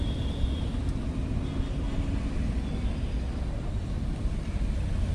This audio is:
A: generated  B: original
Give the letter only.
B